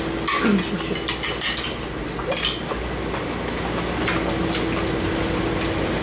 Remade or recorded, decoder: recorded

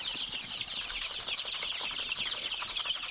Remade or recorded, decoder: recorded